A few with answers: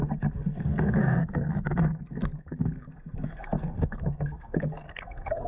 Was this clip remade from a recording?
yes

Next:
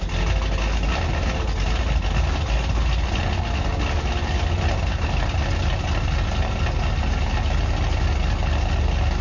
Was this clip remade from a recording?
no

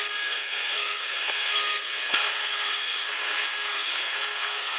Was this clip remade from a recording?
yes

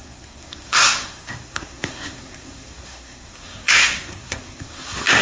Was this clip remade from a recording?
yes